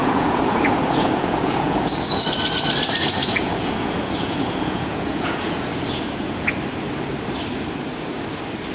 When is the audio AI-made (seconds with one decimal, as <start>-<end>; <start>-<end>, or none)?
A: 0.0-2.3; 3.2-6.6